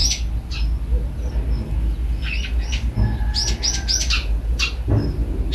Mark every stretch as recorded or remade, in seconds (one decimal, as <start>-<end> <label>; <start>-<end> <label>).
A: 0.0-5.5 recorded